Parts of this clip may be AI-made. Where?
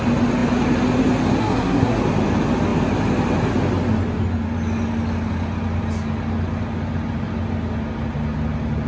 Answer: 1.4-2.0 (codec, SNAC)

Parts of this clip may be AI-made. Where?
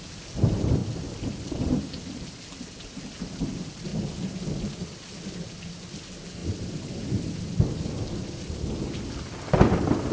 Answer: none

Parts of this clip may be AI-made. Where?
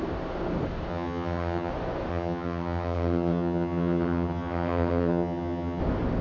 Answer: 0.9-1.7 (vocoder, HiFi-GAN); 2.1-5.8